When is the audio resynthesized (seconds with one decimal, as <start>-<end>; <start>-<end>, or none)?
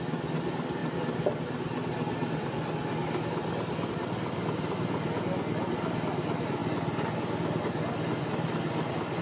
none